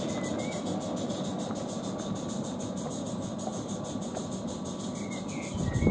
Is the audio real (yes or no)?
yes